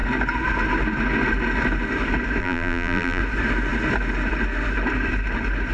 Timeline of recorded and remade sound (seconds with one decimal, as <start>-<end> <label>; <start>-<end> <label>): 0.0-2.4 recorded; 2.4-3.2 remade; 3.2-5.7 recorded